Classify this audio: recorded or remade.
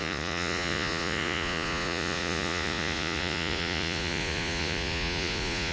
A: remade